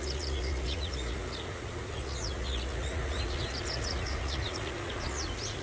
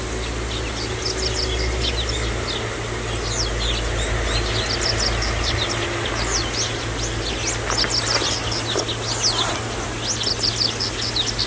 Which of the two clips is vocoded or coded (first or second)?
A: first